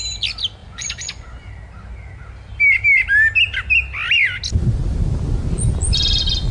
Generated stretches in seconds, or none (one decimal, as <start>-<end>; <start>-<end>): 0.6-1.5